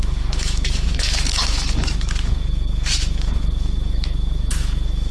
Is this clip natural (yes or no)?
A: no